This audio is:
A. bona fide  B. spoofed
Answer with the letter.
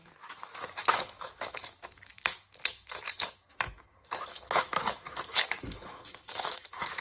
B